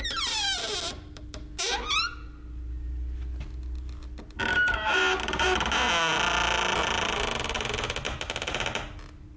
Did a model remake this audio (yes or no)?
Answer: no